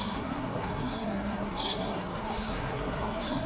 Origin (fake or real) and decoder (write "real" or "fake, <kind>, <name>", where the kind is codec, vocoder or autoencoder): fake, codec, SNAC